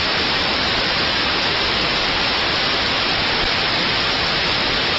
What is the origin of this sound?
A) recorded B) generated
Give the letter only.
B